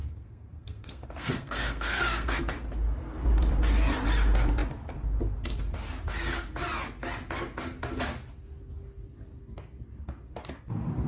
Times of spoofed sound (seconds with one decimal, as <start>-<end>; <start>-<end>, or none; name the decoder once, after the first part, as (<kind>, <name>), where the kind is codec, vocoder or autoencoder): 0.0-2.4 (codec, SNAC)